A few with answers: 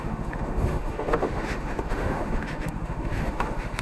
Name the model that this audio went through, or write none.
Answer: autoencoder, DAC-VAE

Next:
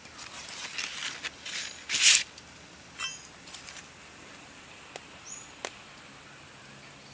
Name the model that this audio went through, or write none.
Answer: none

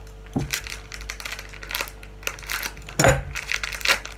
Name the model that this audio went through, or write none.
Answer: none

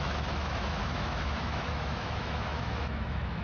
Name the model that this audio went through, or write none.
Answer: autoencoder, DAC-VAE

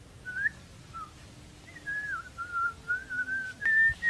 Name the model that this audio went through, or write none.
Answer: none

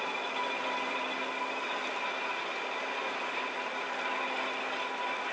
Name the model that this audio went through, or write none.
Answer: none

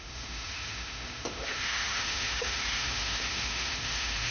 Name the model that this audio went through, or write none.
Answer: autoencoder, DAC-VAE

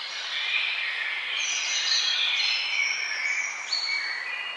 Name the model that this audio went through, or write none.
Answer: none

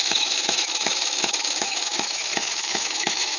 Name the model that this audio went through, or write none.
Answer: autoencoder, DAC-VAE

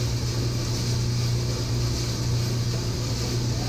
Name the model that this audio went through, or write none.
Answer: none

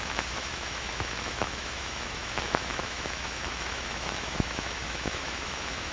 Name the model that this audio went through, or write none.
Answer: autoencoder, DAC-VAE